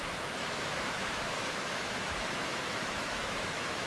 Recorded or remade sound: remade